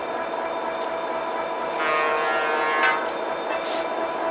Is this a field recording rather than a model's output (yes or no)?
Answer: yes